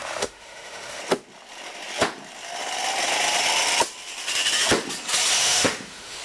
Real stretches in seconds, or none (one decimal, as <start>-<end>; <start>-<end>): 1.0-5.4